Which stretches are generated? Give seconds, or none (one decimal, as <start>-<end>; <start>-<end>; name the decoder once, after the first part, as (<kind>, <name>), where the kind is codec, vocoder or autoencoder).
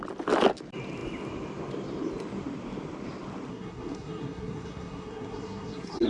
3.5-6.1 (codec, SNAC)